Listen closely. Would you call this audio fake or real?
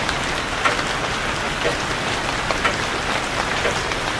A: real